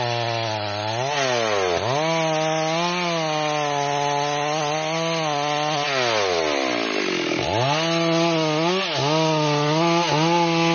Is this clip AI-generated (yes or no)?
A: no